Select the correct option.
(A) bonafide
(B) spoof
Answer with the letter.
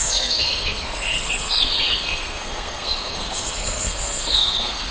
B